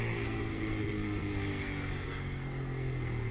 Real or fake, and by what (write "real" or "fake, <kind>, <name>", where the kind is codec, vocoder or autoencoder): fake, codec, SNAC